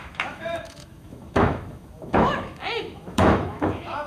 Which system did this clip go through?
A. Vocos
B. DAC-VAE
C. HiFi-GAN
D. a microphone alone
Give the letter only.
B